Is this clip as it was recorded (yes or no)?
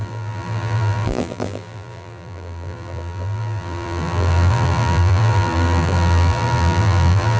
no